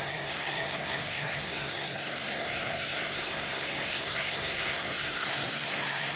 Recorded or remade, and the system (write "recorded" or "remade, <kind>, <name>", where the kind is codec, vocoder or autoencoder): remade, codec, SNAC